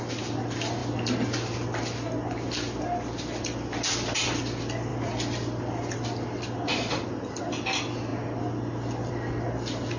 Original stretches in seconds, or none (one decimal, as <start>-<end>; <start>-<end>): 0.0-10.0